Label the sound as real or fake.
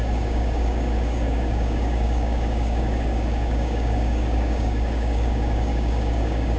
fake